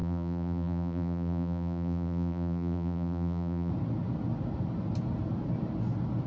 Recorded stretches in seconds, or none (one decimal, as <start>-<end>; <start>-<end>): 3.7-6.3